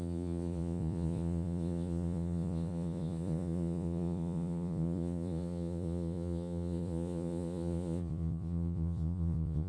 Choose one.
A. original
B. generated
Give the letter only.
B